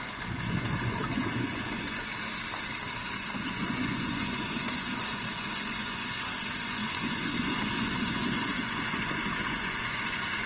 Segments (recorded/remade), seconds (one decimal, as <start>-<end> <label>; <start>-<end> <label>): 0.0-2.1 remade; 2.1-3.0 recorded; 3.0-10.5 remade